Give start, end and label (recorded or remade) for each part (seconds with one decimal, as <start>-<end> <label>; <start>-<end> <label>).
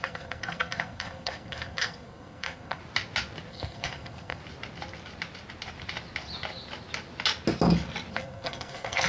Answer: 0.0-2.8 remade; 2.8-3.5 recorded; 3.5-4.4 remade; 4.4-8.1 recorded; 8.1-9.1 remade